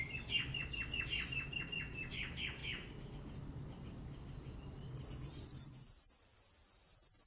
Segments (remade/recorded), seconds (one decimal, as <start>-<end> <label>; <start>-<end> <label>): 0.0-7.3 recorded